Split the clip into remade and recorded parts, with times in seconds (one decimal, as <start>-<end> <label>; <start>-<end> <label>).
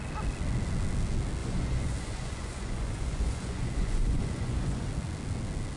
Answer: 0.0-1.4 recorded; 1.4-4.9 remade; 4.9-5.8 recorded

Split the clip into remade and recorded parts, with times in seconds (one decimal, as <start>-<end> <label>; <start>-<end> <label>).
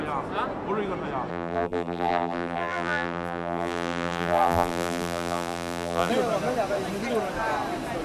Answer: 0.0-1.3 recorded; 1.3-6.1 remade; 6.1-8.0 recorded